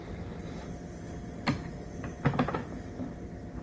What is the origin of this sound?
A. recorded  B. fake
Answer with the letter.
A